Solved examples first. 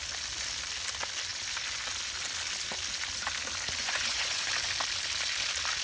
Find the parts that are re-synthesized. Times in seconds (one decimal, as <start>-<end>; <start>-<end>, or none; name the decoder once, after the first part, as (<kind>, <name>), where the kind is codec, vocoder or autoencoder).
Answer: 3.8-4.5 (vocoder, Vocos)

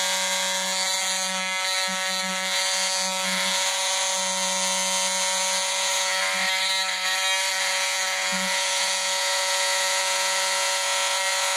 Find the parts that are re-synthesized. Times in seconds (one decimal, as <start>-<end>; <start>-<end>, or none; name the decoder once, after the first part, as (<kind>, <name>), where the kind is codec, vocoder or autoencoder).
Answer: 0.0-6.2 (vocoder, Vocos); 7.5-11.6

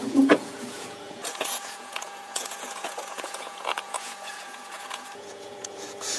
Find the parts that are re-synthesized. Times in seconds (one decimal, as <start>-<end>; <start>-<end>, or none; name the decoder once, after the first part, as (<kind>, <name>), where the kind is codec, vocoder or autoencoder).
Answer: 0.0-6.2 (vocoder, Vocos)

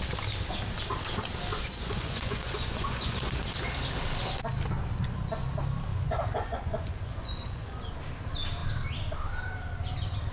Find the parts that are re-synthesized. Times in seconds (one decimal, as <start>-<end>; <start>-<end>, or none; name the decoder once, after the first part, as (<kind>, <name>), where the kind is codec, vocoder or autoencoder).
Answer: 1.5-3.3 (vocoder, Vocos); 5.9-7.8